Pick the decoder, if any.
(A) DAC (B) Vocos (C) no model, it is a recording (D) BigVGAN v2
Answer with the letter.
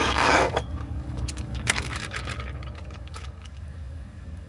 A